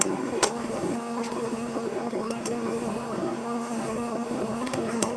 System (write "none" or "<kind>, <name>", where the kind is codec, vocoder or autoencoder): codec, SNAC